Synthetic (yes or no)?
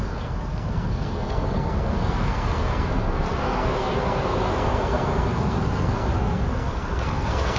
yes